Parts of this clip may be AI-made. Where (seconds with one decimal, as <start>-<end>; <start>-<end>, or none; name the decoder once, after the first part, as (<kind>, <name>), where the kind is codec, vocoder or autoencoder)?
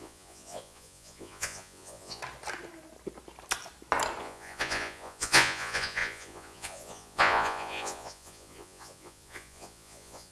0.0-2.2 (vocoder, Vocos); 4.2-10.3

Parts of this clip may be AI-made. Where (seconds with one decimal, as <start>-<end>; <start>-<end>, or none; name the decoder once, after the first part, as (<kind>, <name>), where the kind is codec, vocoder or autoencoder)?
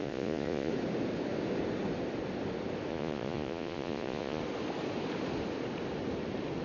0.0-0.7 (vocoder, Vocos); 2.9-4.4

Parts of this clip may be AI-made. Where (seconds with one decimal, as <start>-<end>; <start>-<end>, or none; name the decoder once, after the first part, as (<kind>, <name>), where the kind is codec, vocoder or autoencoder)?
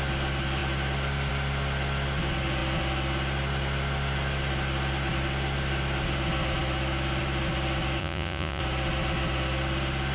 8.0-8.6 (vocoder, Vocos)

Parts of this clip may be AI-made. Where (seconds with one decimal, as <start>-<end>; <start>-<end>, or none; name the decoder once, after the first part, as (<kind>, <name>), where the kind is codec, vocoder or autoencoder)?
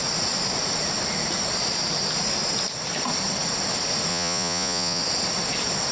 4.1-5.0 (vocoder, Vocos)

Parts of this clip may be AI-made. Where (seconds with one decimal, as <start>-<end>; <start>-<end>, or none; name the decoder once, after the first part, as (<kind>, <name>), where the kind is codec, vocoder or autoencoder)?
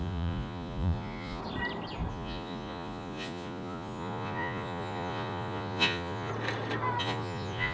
0.0-1.4 (vocoder, Vocos); 2.1-6.3; 7.0-7.7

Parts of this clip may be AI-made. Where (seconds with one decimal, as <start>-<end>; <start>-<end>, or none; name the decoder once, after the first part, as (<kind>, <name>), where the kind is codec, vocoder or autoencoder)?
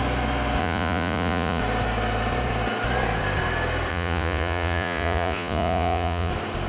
0.6-1.6 (vocoder, Vocos); 3.9-6.3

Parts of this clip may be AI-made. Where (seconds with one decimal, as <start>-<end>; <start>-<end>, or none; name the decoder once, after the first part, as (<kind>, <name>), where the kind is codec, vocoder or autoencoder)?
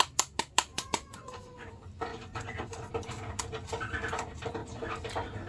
0.7-1.7 (vocoder, Vocos); 2.1-2.9